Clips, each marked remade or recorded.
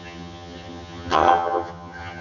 remade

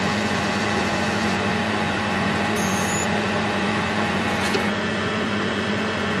remade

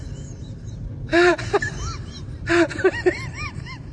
remade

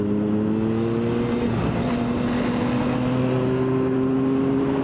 recorded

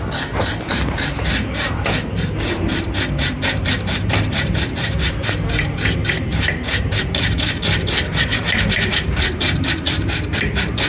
remade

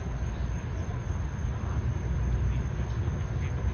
recorded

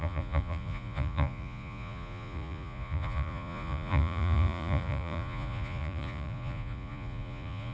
remade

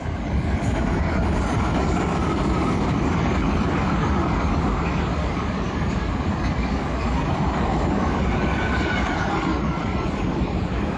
remade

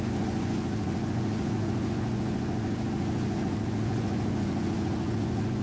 remade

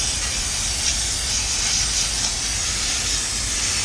recorded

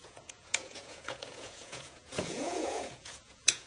remade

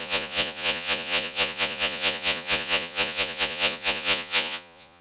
remade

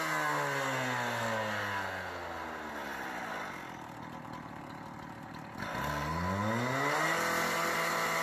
recorded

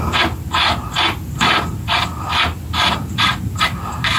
recorded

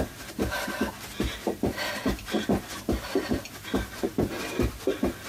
recorded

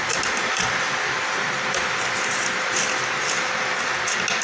recorded